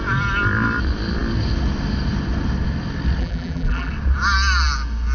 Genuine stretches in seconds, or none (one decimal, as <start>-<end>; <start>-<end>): 0.0-3.2; 3.9-5.1